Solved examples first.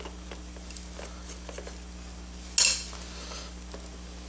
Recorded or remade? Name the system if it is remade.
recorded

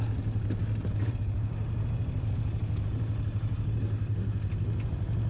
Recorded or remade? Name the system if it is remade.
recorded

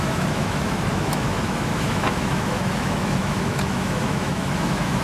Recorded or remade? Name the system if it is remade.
remade, autoencoder, DAC-VAE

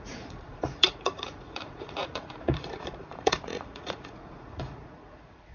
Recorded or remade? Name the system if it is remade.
remade, vocoder, Vocos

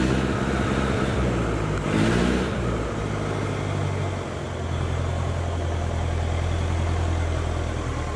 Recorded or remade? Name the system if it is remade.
recorded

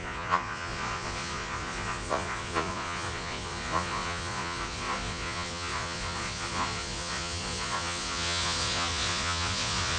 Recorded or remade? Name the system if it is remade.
remade, vocoder, Vocos